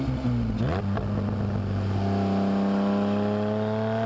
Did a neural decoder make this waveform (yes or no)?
no